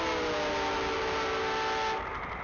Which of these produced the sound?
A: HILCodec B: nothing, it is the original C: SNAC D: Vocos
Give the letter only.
B